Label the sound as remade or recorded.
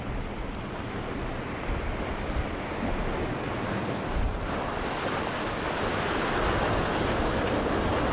recorded